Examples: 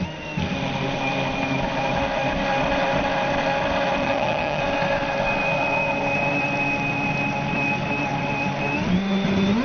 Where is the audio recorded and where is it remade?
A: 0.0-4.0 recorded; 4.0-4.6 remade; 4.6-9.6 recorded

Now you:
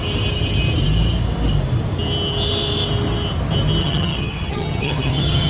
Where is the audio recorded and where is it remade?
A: 0.0-3.8 recorded; 3.8-5.5 remade

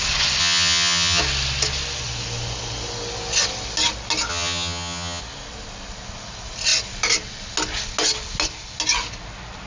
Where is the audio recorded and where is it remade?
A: 0.0-0.4 recorded; 0.4-1.2 remade; 1.2-4.3 recorded; 4.3-5.2 remade; 5.2-9.7 recorded

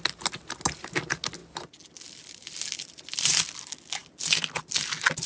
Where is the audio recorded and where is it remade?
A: 0.0-5.3 recorded

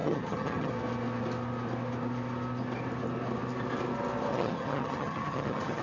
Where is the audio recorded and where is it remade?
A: 0.0-0.7 remade; 0.7-4.3 recorded; 4.3-5.8 remade

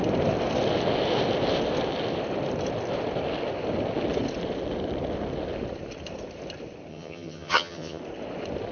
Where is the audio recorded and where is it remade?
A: 0.0-6.9 recorded; 6.9-8.0 remade; 8.0-8.7 recorded

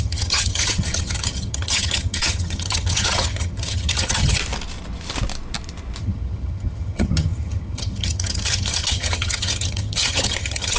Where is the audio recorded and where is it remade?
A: 0.0-4.4 remade; 4.4-6.0 recorded; 6.0-10.8 remade